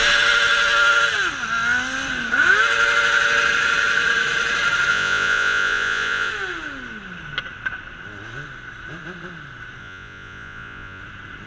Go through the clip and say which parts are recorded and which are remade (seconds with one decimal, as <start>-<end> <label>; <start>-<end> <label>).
0.0-4.9 recorded; 4.9-6.3 remade; 6.3-9.8 recorded; 9.8-11.0 remade; 11.0-11.5 recorded